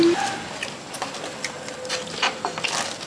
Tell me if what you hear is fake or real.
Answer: real